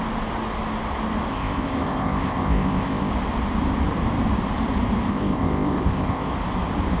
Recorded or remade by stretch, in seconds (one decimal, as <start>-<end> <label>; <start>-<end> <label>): 0.0-1.3 recorded; 1.3-3.1 remade; 3.1-5.1 recorded; 5.1-6.3 remade; 6.3-7.0 recorded